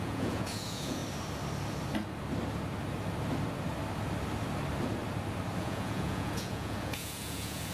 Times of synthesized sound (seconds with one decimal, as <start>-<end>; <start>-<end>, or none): 0.0-1.0; 5.6-7.7